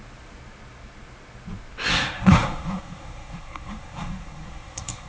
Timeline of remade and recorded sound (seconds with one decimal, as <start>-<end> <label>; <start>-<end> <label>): 0.0-1.9 recorded; 1.9-5.1 remade